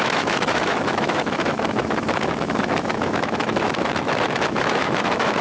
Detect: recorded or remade remade